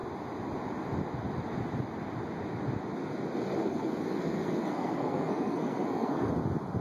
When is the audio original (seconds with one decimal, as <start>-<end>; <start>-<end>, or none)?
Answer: 0.0-3.6; 6.3-6.8